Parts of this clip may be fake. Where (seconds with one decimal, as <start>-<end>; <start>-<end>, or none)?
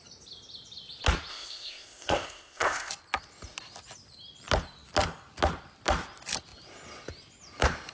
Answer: 1.3-2.9